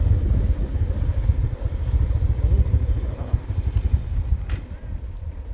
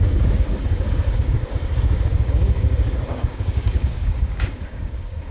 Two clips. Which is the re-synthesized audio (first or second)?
second